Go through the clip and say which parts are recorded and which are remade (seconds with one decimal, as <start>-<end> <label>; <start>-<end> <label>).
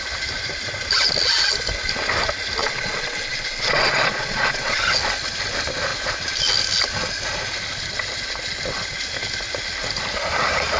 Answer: 0.0-2.6 recorded; 2.6-4.8 remade; 4.8-10.8 recorded